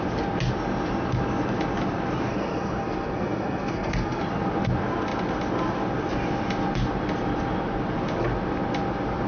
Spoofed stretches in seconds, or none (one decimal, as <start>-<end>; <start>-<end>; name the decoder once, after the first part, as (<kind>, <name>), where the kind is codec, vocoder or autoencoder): 2.3-4.2 (codec, SNAC)